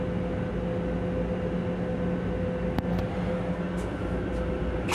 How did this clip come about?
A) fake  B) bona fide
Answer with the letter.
B